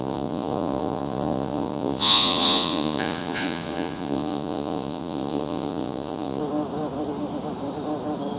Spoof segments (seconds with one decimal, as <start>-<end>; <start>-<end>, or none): 0.0-6.4

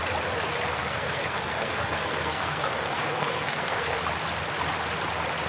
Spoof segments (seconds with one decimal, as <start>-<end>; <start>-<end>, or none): 0.7-4.0

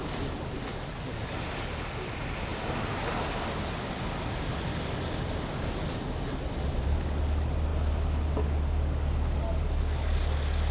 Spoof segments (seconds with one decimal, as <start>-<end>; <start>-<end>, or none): none

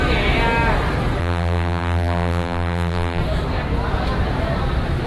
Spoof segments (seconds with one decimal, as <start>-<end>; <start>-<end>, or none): 1.2-3.2

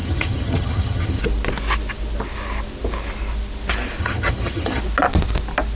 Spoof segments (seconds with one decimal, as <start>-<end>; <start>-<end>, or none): 0.0-1.2; 4.0-4.8